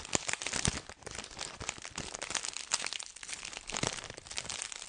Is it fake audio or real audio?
real